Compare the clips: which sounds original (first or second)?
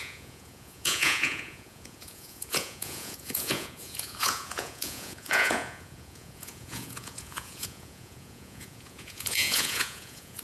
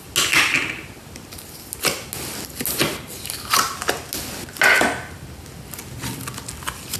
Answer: second